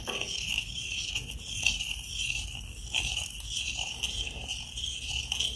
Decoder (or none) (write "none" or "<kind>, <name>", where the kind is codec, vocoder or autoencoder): none